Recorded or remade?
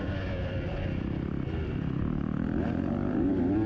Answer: remade